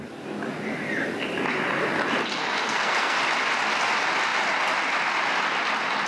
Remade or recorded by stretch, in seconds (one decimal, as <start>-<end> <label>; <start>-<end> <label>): 0.0-2.4 recorded; 2.4-3.2 remade; 3.2-6.1 recorded